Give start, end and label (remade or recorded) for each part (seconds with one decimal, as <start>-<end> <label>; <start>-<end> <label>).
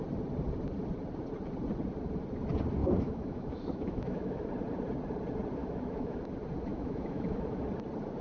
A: 0.0-2.8 recorded; 2.8-4.5 remade; 4.5-5.6 recorded; 5.6-6.3 remade; 6.3-6.7 recorded; 6.7-7.6 remade; 7.6-8.2 recorded